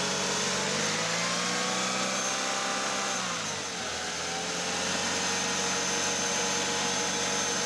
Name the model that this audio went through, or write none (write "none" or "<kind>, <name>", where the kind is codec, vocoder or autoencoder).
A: none